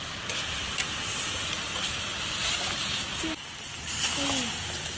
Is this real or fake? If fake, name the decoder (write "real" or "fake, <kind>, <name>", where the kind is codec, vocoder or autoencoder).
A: real